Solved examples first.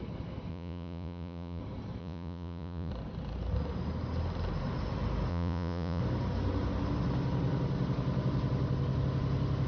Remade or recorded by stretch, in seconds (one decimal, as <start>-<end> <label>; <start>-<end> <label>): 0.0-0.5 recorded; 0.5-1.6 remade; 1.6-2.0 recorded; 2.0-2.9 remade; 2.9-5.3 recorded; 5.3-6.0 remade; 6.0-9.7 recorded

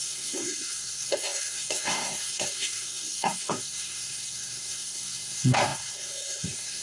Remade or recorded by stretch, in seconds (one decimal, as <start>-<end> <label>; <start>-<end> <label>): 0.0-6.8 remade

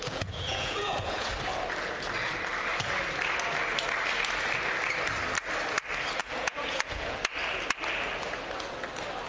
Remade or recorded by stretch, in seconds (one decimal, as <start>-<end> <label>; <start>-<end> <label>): 0.0-1.3 remade; 1.3-6.2 recorded; 6.2-7.2 remade; 7.2-9.3 recorded

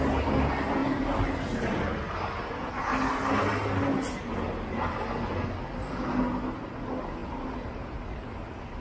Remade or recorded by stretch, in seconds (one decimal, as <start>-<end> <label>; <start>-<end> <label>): 0.0-0.8 recorded; 0.8-2.1 remade; 2.1-7.2 recorded; 7.2-8.0 remade; 8.0-8.8 recorded

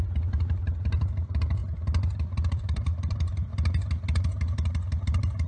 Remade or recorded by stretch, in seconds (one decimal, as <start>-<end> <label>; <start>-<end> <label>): 0.0-1.6 remade; 1.6-2.5 recorded; 2.5-3.5 remade; 3.5-5.0 recorded; 5.0-5.5 remade

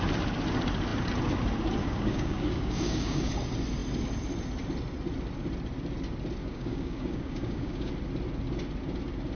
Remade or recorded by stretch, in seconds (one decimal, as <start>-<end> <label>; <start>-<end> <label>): 0.0-1.8 recorded; 1.8-3.3 remade; 3.3-6.4 recorded; 6.4-7.9 remade; 7.9-9.3 recorded

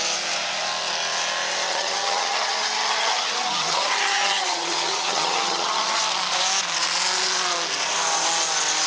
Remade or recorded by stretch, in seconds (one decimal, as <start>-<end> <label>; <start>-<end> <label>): 0.0-1.7 recorded; 1.7-6.0 remade; 6.0-8.9 recorded

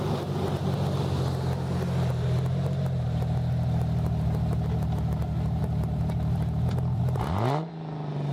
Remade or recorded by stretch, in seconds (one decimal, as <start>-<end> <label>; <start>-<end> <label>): 0.0-5.6 recorded; 5.6-7.0 remade; 7.0-8.3 recorded